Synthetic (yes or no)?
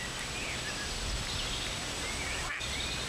no